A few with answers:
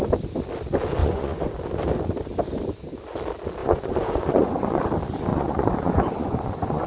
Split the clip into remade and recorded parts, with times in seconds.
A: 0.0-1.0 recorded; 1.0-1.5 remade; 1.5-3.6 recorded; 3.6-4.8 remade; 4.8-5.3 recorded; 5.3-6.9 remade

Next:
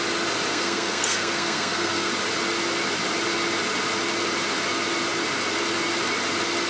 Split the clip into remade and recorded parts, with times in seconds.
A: 0.0-0.5 recorded; 0.5-2.1 remade; 2.1-6.7 recorded

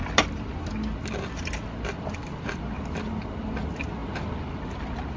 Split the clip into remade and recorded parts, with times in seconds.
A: 0.0-5.2 recorded

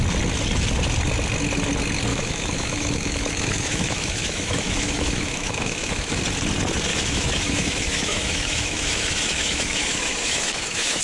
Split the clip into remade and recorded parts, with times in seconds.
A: 0.0-2.1 recorded; 2.1-6.2 remade; 6.2-6.9 recorded; 6.9-11.0 remade